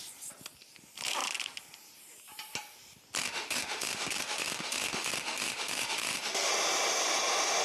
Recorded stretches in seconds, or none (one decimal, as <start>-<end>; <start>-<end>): 0.0-3.2; 6.5-7.6